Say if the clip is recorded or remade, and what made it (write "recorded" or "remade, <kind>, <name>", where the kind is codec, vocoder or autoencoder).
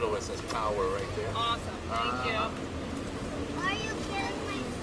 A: recorded